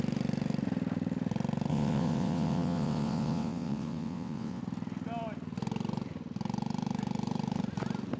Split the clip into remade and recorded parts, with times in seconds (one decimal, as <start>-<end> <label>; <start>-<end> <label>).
0.0-1.7 recorded; 1.7-4.6 remade; 4.6-8.2 recorded